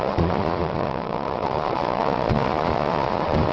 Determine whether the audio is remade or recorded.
remade